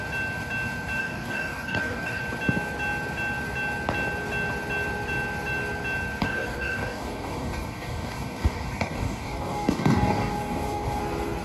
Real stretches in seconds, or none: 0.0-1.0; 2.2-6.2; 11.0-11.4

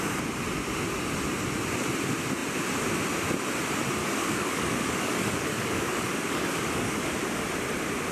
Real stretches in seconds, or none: 0.0-4.0; 7.1-8.1

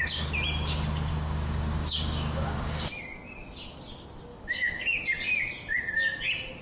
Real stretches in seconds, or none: 0.0-1.1; 2.9-4.3; 5.0-6.6

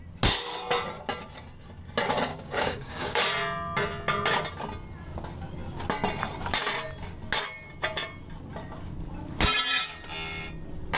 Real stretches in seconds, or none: 0.0-2.3; 3.2-11.0